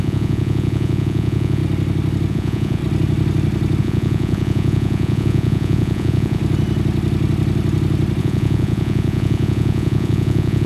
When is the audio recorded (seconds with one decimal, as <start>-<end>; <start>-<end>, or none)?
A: 1.6-2.3; 2.8-3.8; 6.4-8.2